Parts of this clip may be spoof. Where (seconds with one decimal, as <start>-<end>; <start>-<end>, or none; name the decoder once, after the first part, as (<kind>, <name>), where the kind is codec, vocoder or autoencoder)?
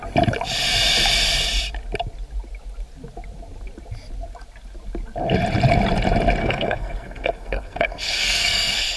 6.4-9.0 (codec, SNAC)